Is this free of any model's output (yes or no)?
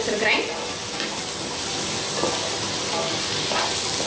yes